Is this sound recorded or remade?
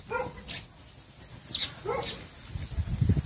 recorded